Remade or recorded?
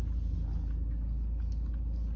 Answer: recorded